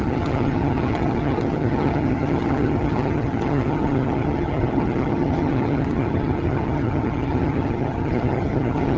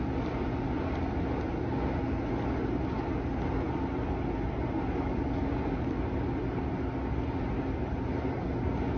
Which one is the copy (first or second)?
first